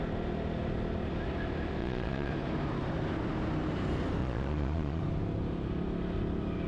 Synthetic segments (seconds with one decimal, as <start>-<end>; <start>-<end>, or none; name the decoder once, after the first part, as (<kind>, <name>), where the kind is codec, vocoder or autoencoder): 1.8-2.3 (vocoder, Vocos); 4.2-5.0